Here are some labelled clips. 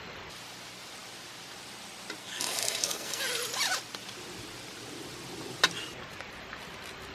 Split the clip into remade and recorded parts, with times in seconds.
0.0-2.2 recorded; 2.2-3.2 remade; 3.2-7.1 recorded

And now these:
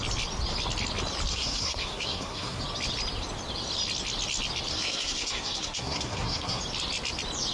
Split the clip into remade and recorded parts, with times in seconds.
0.0-1.3 recorded; 1.3-2.6 remade; 2.6-4.7 recorded; 4.7-6.6 remade; 6.6-7.5 recorded

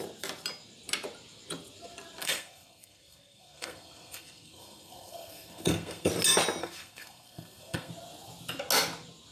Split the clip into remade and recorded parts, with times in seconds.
0.0-2.2 recorded; 2.2-6.1 remade; 6.1-6.6 recorded; 6.6-7.9 remade; 7.9-9.3 recorded

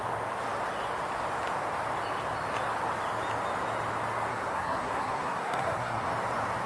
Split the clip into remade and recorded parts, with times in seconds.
0.0-4.3 recorded; 4.3-6.1 remade; 6.1-6.7 recorded

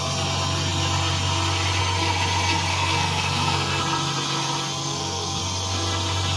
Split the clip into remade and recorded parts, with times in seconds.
0.0-2.7 recorded; 2.7-3.8 remade; 3.8-4.8 recorded; 4.8-5.4 remade; 5.4-6.4 recorded